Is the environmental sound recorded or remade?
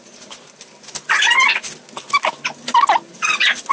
recorded